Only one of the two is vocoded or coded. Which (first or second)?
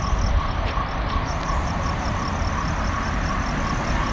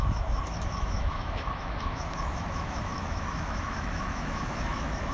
second